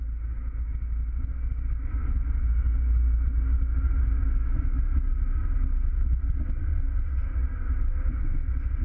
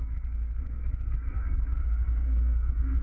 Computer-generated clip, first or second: second